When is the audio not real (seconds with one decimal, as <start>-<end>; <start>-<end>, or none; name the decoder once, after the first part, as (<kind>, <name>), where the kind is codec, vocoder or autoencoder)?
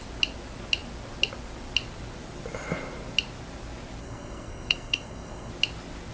4.0-5.5 (codec, SNAC)